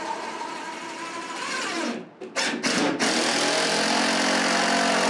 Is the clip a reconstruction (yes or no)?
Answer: no